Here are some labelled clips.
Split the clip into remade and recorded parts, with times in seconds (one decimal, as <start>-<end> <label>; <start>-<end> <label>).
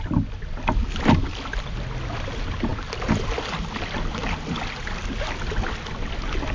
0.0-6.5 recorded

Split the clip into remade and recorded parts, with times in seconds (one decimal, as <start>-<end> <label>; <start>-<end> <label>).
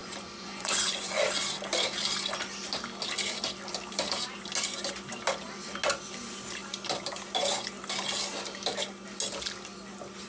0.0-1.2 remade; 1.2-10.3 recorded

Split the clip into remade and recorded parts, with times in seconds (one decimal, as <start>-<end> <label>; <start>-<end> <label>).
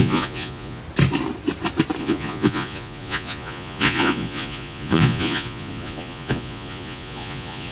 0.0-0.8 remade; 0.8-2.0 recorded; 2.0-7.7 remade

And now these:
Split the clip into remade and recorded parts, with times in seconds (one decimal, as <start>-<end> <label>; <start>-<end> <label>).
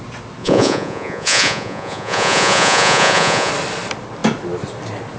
0.0-0.4 recorded; 0.4-3.5 remade; 3.5-5.2 recorded